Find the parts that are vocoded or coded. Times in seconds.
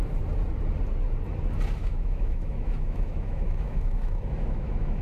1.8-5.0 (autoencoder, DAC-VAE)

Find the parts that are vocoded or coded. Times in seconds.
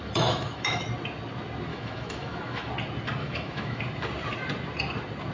0.0-0.8 (autoencoder, DAC-VAE); 1.7-2.7; 3.2-3.8